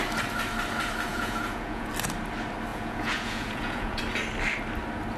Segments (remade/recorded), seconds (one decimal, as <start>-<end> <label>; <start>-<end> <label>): 0.0-1.1 recorded; 1.1-1.9 remade; 1.9-2.7 recorded; 2.7-4.0 remade; 4.0-5.2 recorded